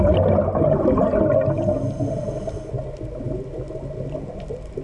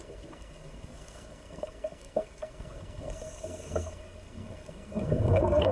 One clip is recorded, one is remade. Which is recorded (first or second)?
first